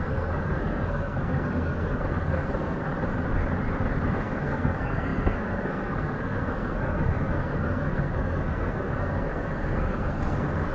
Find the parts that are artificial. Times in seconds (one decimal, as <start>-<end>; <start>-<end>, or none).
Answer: 0.0-2.8; 4.1-10.7